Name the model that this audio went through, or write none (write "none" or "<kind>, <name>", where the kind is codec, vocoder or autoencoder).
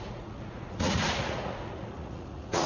vocoder, Vocos